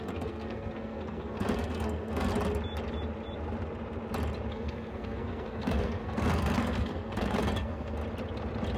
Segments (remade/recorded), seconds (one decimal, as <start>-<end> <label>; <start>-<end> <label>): 0.0-2.3 remade; 2.3-4.5 recorded; 4.5-8.0 remade; 8.0-8.8 recorded

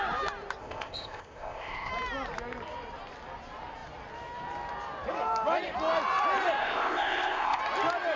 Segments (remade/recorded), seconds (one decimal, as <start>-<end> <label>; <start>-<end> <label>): 0.0-0.6 recorded; 0.6-1.9 remade; 1.9-6.6 recorded; 6.6-7.6 remade; 7.6-8.2 recorded

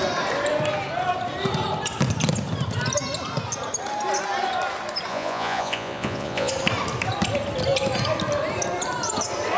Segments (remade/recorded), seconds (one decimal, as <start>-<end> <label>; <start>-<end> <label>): 0.0-5.1 recorded; 5.1-6.5 remade; 6.5-9.6 recorded